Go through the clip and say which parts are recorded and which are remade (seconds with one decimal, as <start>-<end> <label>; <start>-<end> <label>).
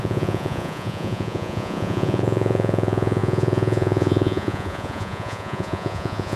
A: 0.0-6.4 remade